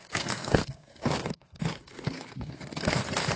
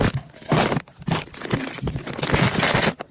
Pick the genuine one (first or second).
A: second